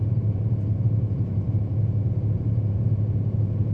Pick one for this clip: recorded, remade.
remade